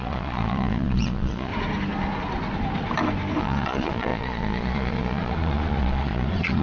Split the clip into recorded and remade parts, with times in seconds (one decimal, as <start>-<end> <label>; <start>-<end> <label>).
0.0-1.5 remade; 1.5-3.4 recorded; 3.4-6.6 remade